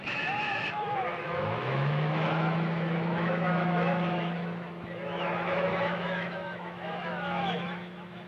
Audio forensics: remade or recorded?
remade